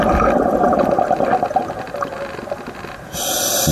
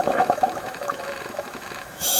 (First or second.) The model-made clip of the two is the second